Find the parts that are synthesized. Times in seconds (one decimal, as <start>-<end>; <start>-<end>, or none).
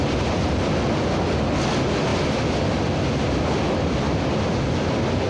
none